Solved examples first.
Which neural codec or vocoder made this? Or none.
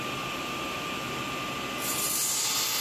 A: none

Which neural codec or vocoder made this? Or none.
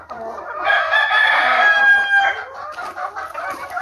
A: none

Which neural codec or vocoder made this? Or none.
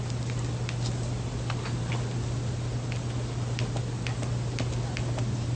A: none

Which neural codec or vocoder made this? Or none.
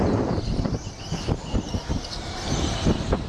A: none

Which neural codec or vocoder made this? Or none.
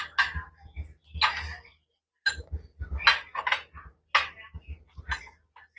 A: none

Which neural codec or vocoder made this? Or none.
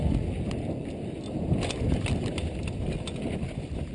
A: none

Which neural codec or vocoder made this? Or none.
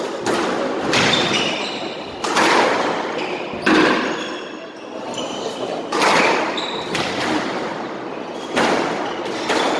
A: none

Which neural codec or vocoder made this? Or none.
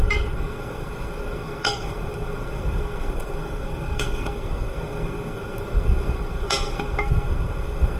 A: codec, SNAC